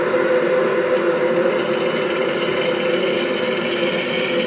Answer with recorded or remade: recorded